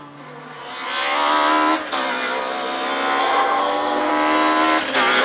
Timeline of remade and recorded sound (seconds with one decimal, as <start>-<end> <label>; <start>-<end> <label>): 0.0-0.6 remade; 0.6-3.2 recorded; 3.2-4.1 remade; 4.1-5.2 recorded